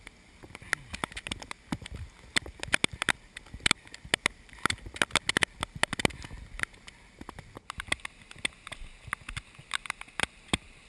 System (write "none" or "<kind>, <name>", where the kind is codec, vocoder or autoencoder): none